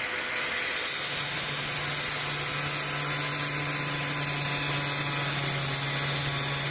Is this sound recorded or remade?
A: recorded